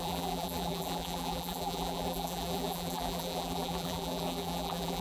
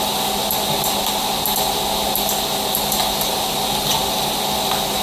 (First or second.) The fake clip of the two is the first